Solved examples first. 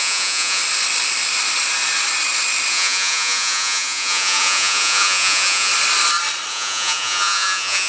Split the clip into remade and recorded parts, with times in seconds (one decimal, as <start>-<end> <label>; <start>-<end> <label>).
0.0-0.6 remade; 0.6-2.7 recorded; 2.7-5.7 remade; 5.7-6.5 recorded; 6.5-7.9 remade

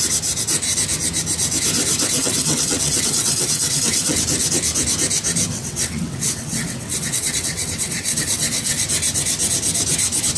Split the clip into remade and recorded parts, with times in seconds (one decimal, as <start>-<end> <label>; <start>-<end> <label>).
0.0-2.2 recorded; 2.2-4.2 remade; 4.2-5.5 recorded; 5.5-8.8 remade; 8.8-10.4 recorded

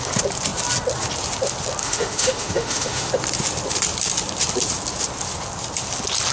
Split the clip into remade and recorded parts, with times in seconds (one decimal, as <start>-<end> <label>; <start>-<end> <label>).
0.0-1.8 recorded; 1.8-3.1 remade; 3.1-6.3 recorded

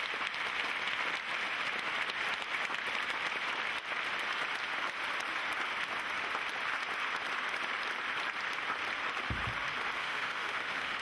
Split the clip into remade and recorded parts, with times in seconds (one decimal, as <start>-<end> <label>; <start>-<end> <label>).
0.0-10.0 recorded; 10.0-11.0 remade

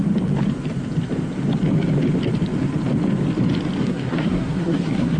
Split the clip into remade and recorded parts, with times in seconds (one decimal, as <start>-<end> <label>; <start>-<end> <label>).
0.0-3.8 recorded; 3.8-5.2 remade

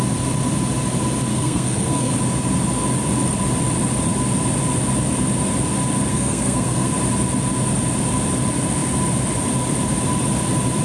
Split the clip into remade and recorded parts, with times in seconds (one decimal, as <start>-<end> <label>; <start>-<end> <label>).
0.0-1.3 recorded; 1.3-2.1 remade; 2.1-6.1 recorded; 6.1-6.9 remade; 6.9-10.8 recorded

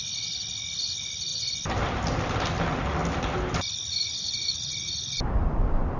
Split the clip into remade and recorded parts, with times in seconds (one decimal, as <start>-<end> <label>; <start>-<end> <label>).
0.0-6.0 recorded

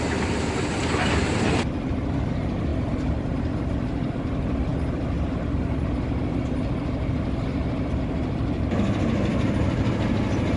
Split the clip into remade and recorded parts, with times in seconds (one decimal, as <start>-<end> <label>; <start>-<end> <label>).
0.0-10.6 recorded